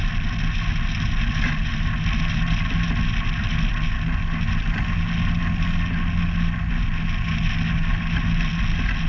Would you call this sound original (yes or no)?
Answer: yes